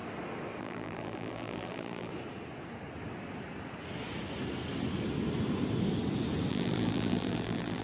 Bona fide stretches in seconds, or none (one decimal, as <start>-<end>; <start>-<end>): 0.0-0.6; 2.1-6.5